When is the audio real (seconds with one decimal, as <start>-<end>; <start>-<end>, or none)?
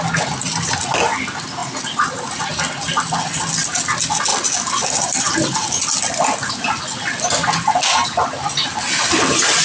0.0-9.6